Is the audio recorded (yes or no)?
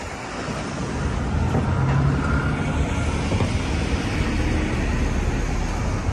yes